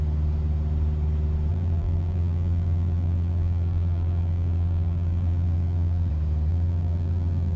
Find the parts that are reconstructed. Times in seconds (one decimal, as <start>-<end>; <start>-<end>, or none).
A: 1.5-6.1; 6.5-7.6